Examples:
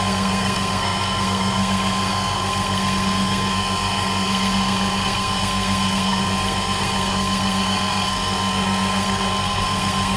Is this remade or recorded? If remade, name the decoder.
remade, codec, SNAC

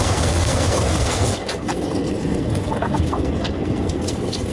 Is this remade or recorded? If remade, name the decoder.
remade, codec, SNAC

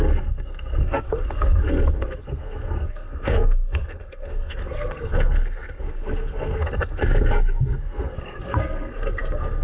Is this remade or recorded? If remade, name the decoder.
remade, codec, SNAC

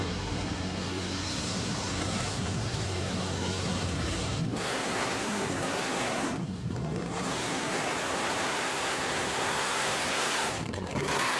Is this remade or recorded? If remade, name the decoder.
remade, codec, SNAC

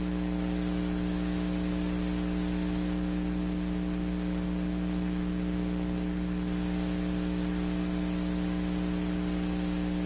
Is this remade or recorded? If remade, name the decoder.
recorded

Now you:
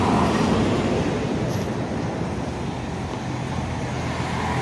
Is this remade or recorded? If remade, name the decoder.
recorded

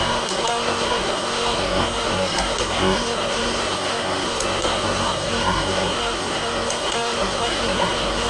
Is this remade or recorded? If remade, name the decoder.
remade, codec, SNAC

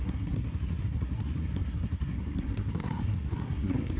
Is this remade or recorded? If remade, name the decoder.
remade, codec, SNAC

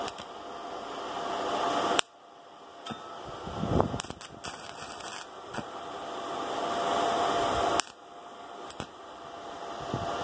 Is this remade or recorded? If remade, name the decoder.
recorded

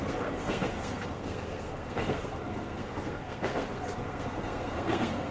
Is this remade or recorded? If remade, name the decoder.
remade, codec, SNAC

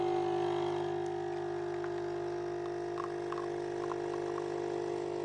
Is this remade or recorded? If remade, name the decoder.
recorded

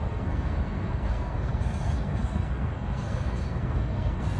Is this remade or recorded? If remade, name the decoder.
remade, codec, SNAC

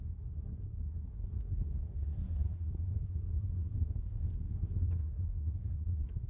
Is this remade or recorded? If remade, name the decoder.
remade, codec, SNAC